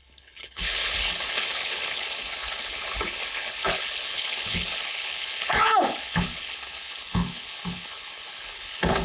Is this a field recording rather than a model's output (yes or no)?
no